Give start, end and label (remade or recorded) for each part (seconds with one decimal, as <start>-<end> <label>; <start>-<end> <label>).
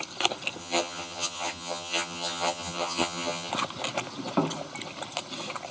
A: 0.0-0.6 recorded; 0.6-3.5 remade; 3.5-5.7 recorded